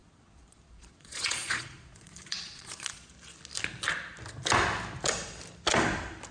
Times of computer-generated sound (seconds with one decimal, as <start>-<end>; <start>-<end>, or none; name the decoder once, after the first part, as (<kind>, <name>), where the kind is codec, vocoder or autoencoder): 0.0-3.1 (vocoder, Vocos)